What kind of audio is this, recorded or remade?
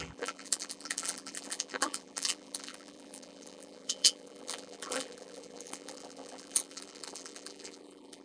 remade